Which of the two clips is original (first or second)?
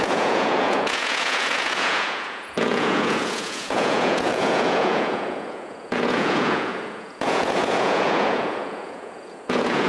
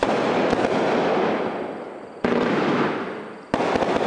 second